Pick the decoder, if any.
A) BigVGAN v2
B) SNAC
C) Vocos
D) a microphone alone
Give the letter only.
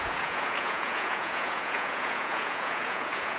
C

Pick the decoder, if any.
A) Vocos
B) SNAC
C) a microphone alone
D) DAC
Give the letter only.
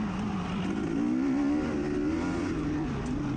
C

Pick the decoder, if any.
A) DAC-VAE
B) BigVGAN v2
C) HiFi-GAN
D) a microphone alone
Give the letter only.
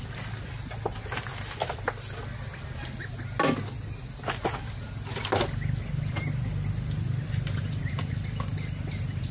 D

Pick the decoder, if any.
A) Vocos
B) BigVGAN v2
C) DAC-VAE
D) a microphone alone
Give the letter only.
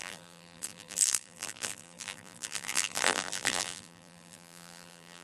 B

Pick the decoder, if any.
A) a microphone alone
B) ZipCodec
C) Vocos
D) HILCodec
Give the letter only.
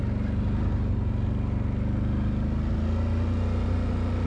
A